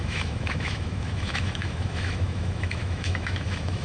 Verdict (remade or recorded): remade